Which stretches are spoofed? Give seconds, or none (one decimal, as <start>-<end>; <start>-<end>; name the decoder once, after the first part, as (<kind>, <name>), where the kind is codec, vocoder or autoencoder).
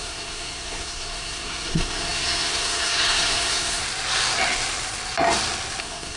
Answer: 0.0-3.8 (codec, SNAC); 5.8-6.2